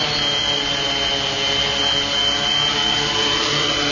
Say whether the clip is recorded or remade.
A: recorded